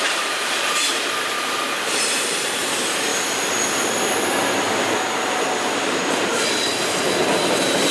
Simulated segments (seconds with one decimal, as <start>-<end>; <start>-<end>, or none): 0.0-3.1; 5.8-7.9